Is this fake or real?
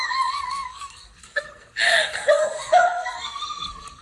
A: fake